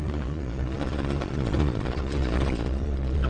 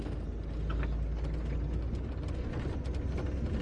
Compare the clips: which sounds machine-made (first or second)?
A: first